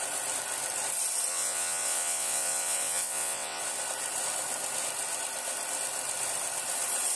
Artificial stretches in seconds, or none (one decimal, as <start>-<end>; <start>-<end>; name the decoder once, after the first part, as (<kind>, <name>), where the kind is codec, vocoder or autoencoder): 1.3-3.6 (vocoder, WaveNeXt)